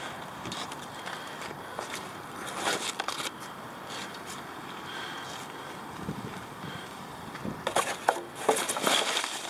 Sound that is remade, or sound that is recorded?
recorded